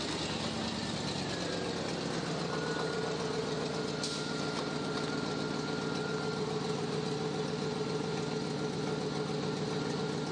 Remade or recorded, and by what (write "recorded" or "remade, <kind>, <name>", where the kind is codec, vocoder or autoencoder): recorded